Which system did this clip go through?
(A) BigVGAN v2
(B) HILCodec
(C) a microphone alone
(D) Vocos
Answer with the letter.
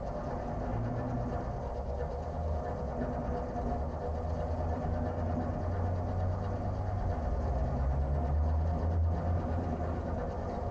C